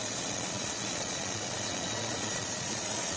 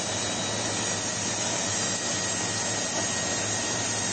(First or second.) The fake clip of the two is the first